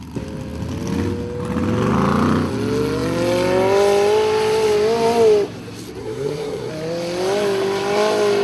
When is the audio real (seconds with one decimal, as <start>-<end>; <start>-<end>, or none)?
0.0-6.0; 6.7-8.4